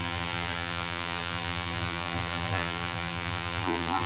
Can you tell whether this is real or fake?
fake